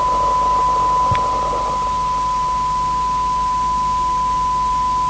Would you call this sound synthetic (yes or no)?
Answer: no